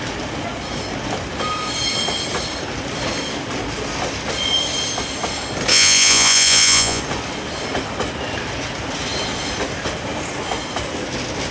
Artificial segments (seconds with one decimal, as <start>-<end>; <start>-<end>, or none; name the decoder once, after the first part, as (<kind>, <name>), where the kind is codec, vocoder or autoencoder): 5.7-7.0 (vocoder, Vocos)